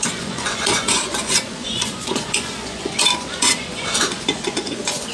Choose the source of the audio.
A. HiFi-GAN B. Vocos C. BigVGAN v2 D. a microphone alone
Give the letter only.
B